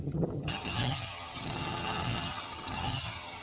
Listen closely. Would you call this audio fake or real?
fake